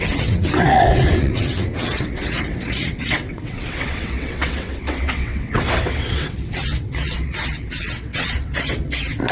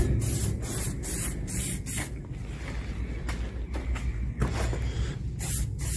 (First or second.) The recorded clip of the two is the second